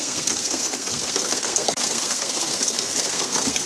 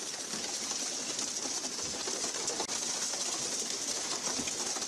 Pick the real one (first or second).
second